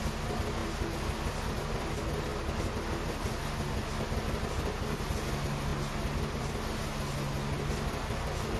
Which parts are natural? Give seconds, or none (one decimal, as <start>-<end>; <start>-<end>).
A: 0.0-8.6